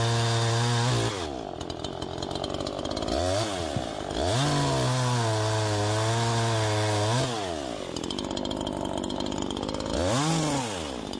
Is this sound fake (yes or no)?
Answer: no